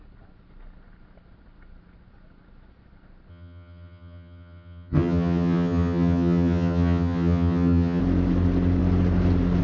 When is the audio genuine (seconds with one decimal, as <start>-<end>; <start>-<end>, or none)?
0.0-3.3; 8.0-9.6

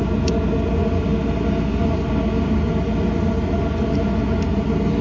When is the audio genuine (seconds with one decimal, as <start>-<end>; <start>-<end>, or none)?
0.0-5.0

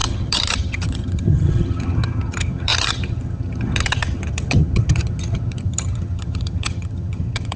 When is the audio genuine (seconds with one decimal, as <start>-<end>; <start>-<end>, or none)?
none

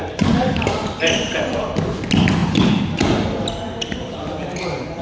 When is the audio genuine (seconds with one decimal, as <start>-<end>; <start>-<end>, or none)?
0.0-5.0

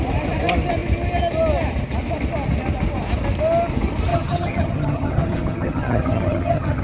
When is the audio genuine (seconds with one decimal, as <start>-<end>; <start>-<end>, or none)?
0.0-4.1

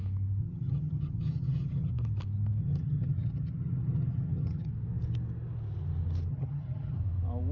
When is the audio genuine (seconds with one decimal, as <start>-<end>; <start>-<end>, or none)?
0.0-0.4; 1.9-2.6; 4.7-6.3; 7.0-7.5